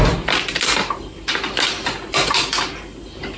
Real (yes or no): yes